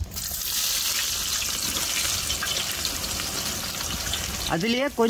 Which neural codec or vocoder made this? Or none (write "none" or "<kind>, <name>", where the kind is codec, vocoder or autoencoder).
none